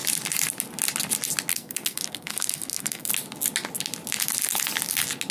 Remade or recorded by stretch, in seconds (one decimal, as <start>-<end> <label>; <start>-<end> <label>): 0.0-1.5 recorded; 1.5-3.1 remade; 3.1-5.3 recorded

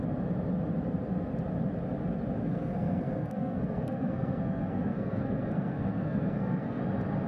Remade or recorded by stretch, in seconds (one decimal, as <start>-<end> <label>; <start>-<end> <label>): 0.0-2.4 recorded; 2.4-6.8 remade; 6.8-7.3 recorded

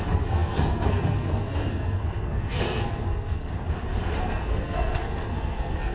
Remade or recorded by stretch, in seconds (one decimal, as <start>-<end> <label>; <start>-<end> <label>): 0.0-3.5 remade; 3.5-4.2 recorded; 4.2-5.9 remade